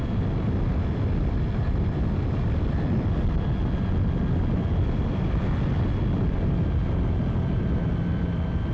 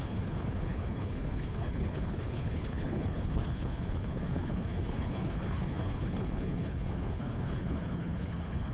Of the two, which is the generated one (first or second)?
second